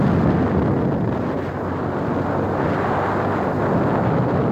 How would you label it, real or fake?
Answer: real